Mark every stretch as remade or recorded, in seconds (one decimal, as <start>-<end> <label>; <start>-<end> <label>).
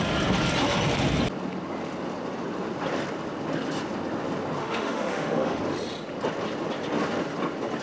0.0-4.6 recorded; 4.6-5.6 remade; 5.6-7.8 recorded